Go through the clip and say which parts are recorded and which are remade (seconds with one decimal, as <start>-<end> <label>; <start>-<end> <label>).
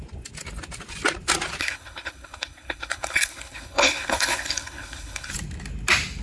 0.0-1.6 recorded; 1.6-5.3 remade; 5.3-6.2 recorded